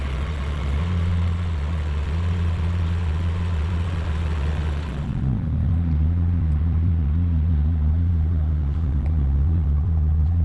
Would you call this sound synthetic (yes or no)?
yes